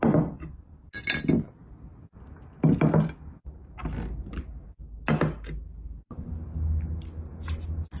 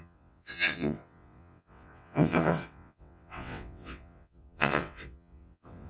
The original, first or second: first